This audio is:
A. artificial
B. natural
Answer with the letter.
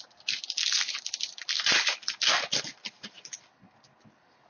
B